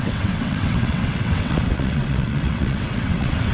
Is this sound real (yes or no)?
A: no